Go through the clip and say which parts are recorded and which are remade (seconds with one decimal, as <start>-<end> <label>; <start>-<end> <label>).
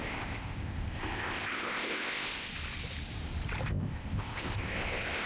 0.0-2.5 remade; 2.5-3.7 recorded; 3.7-5.3 remade